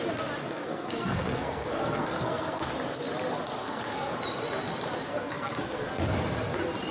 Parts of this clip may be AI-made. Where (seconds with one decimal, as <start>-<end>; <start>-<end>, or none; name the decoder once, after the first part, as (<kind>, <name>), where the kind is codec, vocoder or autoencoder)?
0.4-2.7 (codec, SNAC); 3.6-4.1; 5.1-5.9

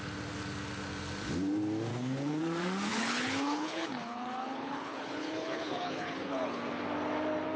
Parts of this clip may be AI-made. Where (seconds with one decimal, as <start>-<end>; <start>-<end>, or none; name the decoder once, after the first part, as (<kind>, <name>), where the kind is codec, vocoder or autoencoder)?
1.9-2.4 (codec, HILCodec); 2.9-6.6

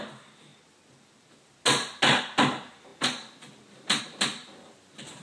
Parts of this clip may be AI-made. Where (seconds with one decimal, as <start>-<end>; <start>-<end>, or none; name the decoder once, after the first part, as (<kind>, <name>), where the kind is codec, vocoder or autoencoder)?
none

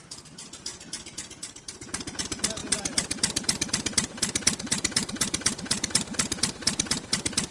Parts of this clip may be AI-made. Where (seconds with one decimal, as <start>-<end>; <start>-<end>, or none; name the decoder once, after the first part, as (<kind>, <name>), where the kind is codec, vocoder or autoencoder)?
2.6-7.1 (vocoder, BigVGAN v2)

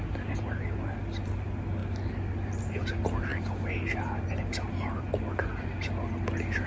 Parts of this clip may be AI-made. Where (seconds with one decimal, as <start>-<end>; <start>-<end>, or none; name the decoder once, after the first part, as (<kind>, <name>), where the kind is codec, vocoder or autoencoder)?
none

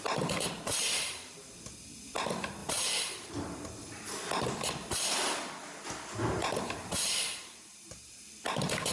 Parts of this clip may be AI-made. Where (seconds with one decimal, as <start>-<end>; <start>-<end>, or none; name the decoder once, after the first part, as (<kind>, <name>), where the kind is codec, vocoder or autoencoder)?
2.6-3.3 (vocoder, BigVGAN v2); 6.4-8.3

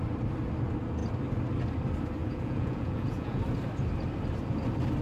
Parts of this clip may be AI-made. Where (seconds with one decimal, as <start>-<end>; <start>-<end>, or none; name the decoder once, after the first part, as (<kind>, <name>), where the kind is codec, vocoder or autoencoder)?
2.2-3.4 (vocoder, Vocos)

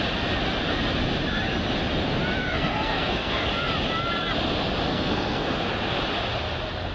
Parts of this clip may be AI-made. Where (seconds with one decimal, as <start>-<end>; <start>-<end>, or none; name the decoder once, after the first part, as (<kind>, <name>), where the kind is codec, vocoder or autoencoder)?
2.4-3.5 (codec, SNAC); 4.9-5.7